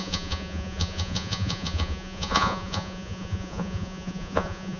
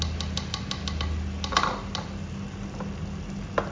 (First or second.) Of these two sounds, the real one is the second